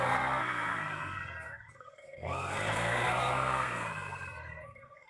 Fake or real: fake